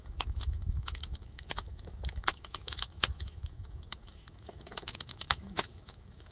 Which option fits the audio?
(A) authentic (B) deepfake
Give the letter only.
B